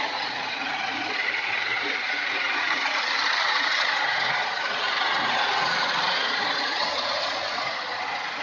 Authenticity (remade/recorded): remade